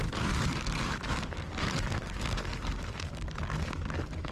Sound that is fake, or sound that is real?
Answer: fake